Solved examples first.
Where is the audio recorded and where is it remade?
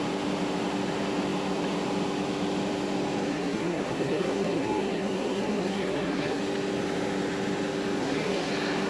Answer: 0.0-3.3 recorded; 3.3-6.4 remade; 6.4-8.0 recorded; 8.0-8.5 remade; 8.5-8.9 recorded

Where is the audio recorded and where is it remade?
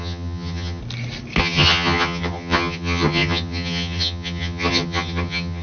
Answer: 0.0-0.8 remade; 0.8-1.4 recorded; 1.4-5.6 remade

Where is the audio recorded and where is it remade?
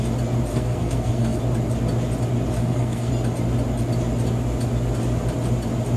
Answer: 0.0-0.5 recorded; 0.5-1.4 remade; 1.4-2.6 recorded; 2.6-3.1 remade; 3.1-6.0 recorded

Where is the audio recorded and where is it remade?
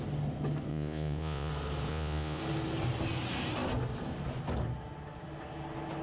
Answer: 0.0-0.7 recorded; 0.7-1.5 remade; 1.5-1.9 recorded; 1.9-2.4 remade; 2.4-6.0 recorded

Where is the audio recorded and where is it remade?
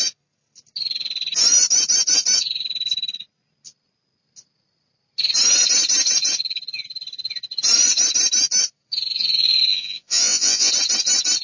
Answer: 0.0-9.7 recorded; 9.7-10.7 remade; 10.7-11.4 recorded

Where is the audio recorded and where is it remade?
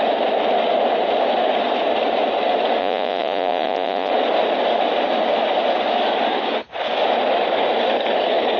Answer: 0.0-2.8 recorded; 2.8-4.1 remade; 4.1-8.6 recorded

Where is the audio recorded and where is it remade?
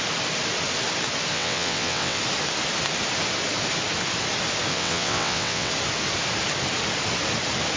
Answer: 0.0-1.3 recorded; 1.3-2.2 remade; 2.2-4.7 recorded; 4.7-5.7 remade; 5.7-7.8 recorded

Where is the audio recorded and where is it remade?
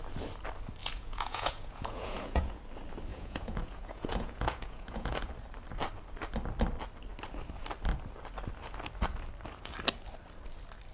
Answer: 0.0-0.8 recorded; 0.8-2.6 remade; 2.6-3.1 recorded; 3.1-5.3 remade; 5.3-10.9 recorded